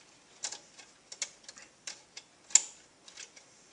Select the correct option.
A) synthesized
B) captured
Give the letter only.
B